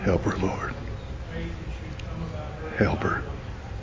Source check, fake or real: real